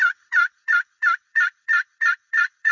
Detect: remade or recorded remade